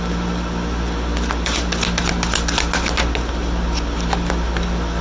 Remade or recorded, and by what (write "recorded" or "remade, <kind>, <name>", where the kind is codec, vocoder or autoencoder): recorded